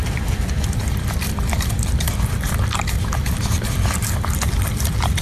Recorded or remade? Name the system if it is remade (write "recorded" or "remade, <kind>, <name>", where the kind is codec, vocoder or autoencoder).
recorded